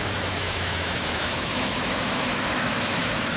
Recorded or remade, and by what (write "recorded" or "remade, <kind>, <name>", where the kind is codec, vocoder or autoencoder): remade, autoencoder, DAC-VAE